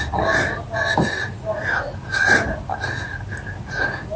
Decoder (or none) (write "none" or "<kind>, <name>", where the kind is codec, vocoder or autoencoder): none